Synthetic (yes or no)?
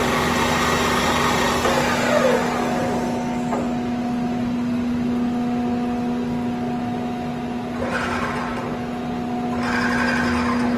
no